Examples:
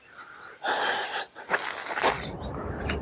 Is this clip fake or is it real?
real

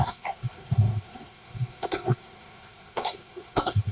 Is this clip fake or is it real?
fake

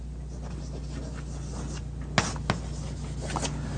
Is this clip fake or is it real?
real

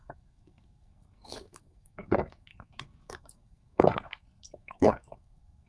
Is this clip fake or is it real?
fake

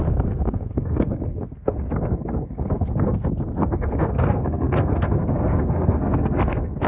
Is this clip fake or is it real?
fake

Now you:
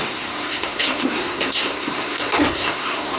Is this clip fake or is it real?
fake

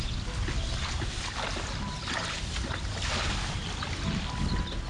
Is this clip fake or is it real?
real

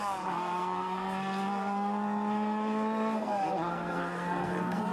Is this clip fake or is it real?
fake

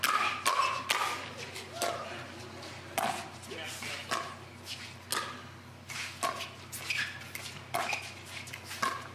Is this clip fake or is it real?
real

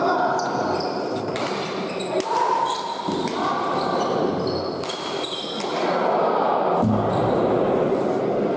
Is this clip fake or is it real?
real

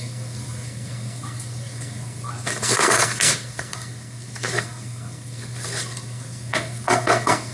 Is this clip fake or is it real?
fake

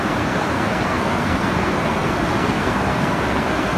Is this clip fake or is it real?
fake